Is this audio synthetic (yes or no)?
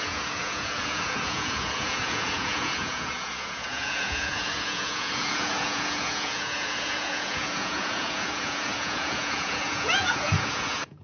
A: yes